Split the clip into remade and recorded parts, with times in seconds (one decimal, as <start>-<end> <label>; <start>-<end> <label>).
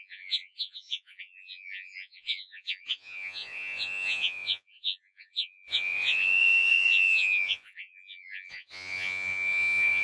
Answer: 0.0-10.0 remade